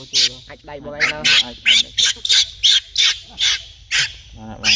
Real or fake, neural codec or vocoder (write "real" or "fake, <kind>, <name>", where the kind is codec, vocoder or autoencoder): real